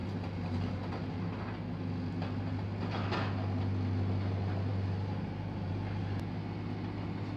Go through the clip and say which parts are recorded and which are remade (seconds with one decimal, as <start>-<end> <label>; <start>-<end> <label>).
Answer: 0.0-7.4 recorded